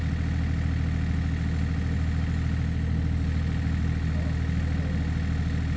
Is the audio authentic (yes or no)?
yes